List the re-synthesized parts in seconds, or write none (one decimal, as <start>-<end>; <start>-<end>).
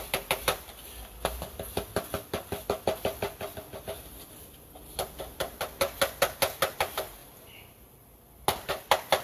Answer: none